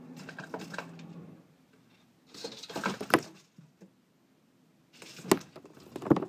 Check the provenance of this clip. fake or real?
real